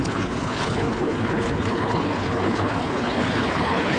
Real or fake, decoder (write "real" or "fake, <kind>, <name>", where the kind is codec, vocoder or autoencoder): fake, codec, HILCodec